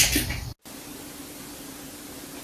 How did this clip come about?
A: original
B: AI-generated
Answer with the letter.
A